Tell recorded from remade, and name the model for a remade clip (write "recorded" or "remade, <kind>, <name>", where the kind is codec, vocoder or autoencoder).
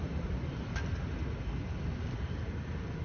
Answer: recorded